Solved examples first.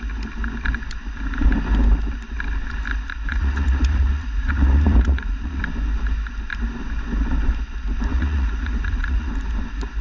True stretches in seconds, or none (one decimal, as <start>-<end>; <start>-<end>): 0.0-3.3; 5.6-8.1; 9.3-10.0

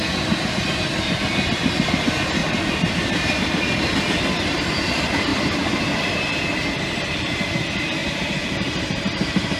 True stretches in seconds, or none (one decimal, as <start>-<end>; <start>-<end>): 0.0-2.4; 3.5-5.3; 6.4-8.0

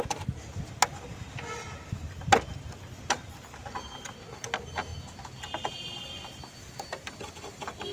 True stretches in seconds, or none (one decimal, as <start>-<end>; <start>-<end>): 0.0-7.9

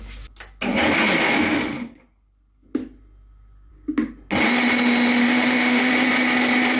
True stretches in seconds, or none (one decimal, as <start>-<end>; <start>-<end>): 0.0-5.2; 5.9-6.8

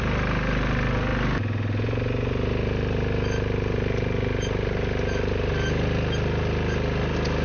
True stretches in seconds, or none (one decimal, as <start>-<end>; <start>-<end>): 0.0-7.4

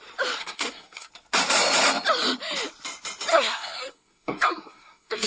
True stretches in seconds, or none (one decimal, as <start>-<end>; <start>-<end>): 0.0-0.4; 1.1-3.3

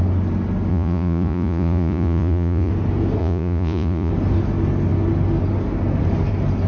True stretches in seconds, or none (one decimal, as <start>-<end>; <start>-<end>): 0.0-0.7; 2.7-3.2; 4.1-6.7